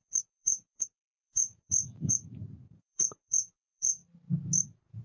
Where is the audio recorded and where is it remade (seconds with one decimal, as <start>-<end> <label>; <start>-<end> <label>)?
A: 0.0-4.0 remade; 4.0-4.6 recorded; 4.6-5.0 remade